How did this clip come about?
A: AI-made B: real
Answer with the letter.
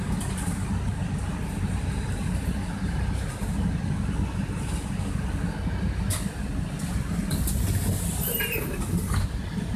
B